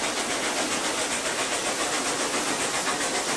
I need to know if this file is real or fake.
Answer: real